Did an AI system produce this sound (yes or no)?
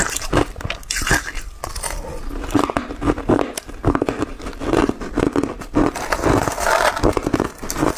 no